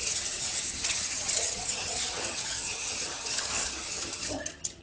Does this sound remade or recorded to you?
remade